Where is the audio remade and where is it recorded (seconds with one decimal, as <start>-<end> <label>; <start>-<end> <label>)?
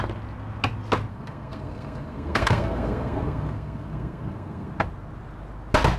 0.0-1.1 recorded; 1.1-4.7 remade; 4.7-6.0 recorded